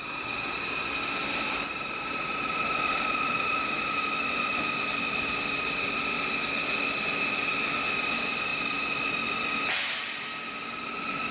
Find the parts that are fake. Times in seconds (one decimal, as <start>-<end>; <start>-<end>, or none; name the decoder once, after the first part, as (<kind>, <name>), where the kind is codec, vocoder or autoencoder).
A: 1.2-3.5 (vocoder, BigVGAN v2)